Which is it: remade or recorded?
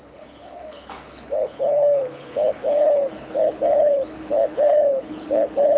remade